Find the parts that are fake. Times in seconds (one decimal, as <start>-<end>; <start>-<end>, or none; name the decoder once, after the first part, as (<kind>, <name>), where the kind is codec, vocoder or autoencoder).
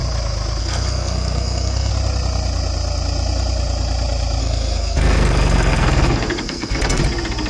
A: 0.6-1.9 (codec, SNAC); 4.4-7.0